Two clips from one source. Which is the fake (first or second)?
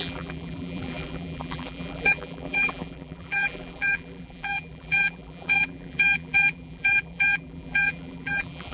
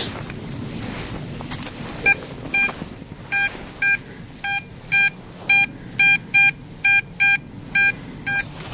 first